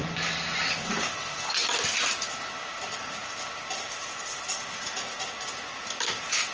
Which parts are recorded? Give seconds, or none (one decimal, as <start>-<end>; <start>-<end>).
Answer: 0.0-6.5